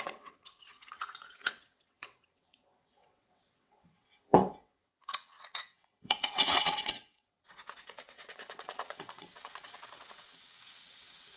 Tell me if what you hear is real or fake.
fake